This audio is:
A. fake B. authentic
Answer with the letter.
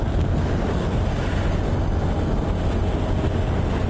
B